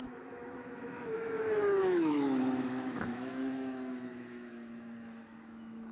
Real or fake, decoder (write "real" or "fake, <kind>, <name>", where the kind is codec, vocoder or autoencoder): fake, autoencoder, DAC-VAE